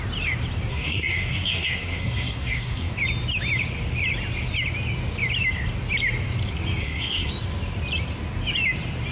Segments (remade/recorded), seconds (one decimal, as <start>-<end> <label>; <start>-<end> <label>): 0.0-0.7 recorded; 0.7-2.9 remade; 2.9-6.8 recorded; 6.8-7.3 remade; 7.3-9.1 recorded

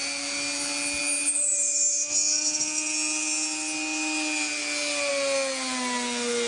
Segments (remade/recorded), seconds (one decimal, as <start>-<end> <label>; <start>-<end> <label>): 0.0-6.5 recorded

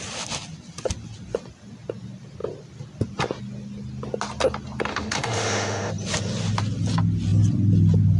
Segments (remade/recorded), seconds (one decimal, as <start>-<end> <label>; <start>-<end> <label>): 0.0-4.9 recorded; 4.9-5.9 remade; 5.9-8.2 recorded